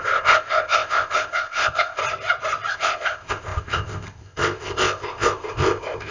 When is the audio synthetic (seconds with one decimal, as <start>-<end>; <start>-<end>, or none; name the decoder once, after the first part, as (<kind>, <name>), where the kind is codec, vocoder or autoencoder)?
0.0-2.0 (codec, ZipCodec); 2.7-6.1